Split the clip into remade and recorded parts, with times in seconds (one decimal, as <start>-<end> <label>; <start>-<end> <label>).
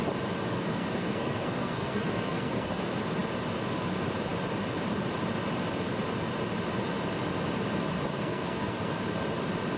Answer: 0.0-0.5 recorded; 0.5-2.8 remade; 2.8-8.1 recorded; 8.1-9.0 remade; 9.0-9.8 recorded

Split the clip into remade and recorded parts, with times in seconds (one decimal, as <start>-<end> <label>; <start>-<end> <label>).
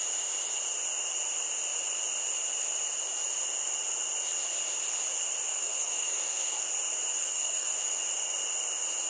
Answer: 0.0-5.5 recorded; 5.5-6.6 remade; 6.6-7.2 recorded; 7.2-7.8 remade; 7.8-9.1 recorded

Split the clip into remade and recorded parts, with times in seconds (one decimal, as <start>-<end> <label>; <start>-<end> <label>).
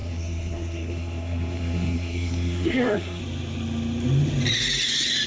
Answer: 0.0-3.2 remade; 3.2-5.3 recorded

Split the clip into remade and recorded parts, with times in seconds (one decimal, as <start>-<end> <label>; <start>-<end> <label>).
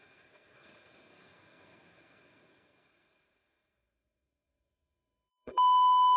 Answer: 0.0-6.2 remade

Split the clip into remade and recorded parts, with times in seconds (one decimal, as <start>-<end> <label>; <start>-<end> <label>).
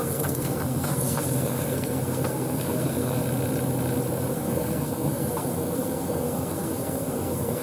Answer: 0.0-3.2 remade; 3.2-4.3 recorded; 4.3-7.6 remade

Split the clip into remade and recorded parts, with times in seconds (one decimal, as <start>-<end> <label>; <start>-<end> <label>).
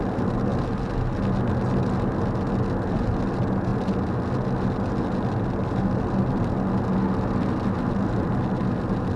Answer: 0.0-9.2 recorded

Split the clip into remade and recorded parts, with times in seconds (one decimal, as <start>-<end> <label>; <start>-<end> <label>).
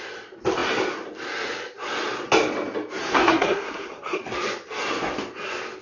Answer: 0.0-3.0 recorded; 3.0-4.2 remade; 4.2-5.8 recorded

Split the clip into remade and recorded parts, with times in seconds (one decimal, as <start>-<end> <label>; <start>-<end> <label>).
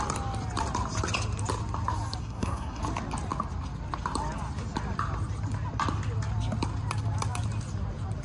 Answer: 0.0-2.2 recorded; 2.2-2.8 remade; 2.8-8.2 recorded